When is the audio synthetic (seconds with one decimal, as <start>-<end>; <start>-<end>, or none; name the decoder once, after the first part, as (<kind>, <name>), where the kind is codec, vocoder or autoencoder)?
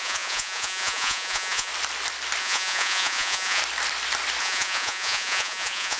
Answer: 0.0-1.7 (vocoder, Vocos); 2.4-3.6; 4.4-6.0